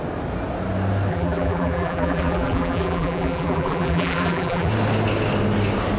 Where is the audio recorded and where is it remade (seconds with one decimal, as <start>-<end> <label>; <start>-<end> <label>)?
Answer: 0.0-1.1 recorded; 1.1-4.7 remade; 4.7-6.0 recorded